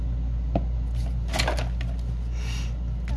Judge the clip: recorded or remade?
recorded